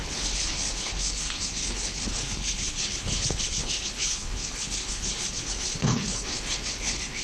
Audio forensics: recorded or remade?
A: remade